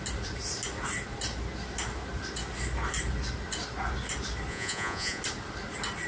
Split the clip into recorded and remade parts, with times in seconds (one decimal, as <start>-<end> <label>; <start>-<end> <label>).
0.0-4.5 recorded; 4.5-5.2 remade; 5.2-6.1 recorded